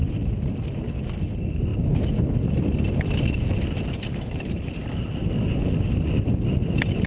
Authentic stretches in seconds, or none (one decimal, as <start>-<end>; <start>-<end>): 0.0-7.1